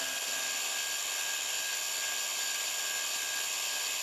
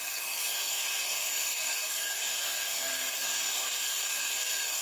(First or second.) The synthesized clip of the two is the second